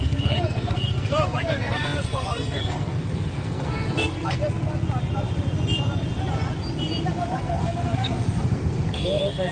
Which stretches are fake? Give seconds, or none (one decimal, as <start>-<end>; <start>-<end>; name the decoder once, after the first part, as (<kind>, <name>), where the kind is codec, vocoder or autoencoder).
0.0-4.4 (codec, SNAC); 7.3-9.5